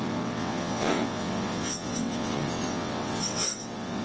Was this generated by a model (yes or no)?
yes